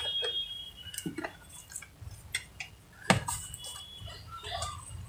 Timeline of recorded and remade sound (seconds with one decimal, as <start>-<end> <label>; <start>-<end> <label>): 0.0-5.1 recorded